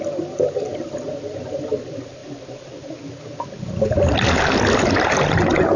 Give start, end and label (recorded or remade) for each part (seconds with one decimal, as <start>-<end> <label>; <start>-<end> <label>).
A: 0.0-5.8 recorded